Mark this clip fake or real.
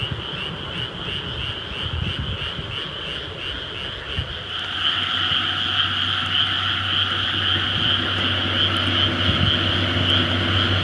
real